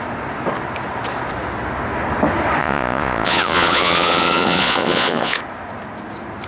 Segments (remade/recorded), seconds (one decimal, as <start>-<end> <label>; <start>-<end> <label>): 0.0-2.6 recorded; 2.6-5.4 remade; 5.4-6.5 recorded